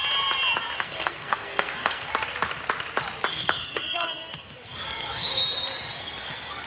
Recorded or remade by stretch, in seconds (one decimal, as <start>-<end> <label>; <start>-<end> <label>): 0.0-0.8 recorded; 0.8-2.1 remade; 2.1-3.3 recorded; 3.3-5.4 remade; 5.4-6.0 recorded; 6.0-6.7 remade